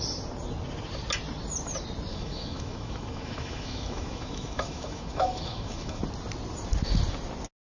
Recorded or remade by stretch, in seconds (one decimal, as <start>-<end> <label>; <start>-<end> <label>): 0.0-2.1 recorded; 2.1-6.0 remade; 6.0-7.6 recorded